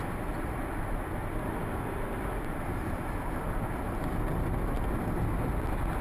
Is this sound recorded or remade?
remade